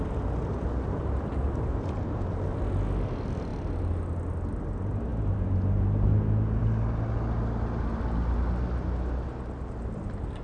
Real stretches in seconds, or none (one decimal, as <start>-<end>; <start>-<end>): 0.0-10.4